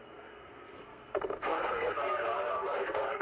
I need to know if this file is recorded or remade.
remade